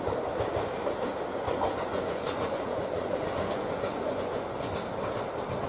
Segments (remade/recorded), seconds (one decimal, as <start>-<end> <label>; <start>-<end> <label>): 0.0-1.3 recorded; 1.3-4.7 remade; 4.7-5.7 recorded